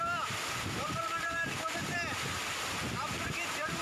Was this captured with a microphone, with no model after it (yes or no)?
no